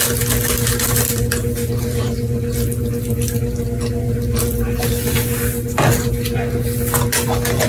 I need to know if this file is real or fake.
real